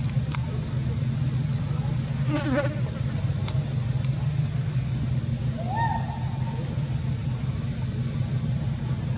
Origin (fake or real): real